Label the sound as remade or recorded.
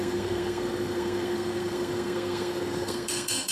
remade